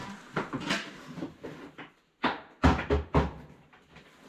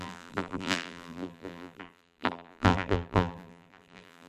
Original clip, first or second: first